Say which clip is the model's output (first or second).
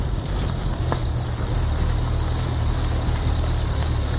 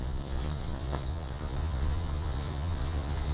second